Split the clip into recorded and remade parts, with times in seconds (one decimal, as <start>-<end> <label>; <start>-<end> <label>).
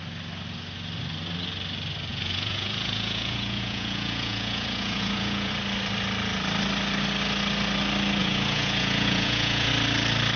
0.0-2.1 recorded; 2.1-5.5 remade; 5.5-8.2 recorded; 8.2-9.7 remade; 9.7-10.4 recorded